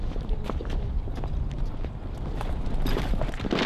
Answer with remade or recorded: recorded